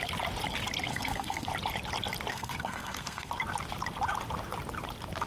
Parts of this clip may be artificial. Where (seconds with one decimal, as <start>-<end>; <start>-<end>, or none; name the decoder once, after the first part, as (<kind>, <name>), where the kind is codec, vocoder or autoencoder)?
0.9-1.5 (codec, SNAC); 2.3-3.3